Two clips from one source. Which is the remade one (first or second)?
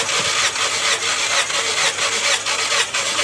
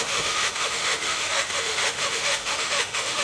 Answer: second